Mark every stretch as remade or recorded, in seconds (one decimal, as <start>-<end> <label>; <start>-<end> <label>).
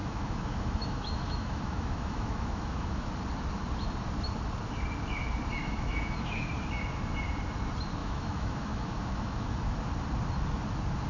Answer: 0.0-3.1 remade; 3.1-5.6 recorded; 5.6-6.5 remade; 6.5-8.0 recorded; 8.0-9.7 remade; 9.7-11.1 recorded